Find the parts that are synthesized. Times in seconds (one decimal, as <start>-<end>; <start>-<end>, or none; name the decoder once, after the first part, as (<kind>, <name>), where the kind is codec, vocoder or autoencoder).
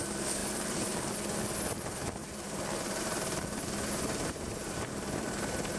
0.4-1.1 (vocoder, BigVGAN v2); 2.2-5.8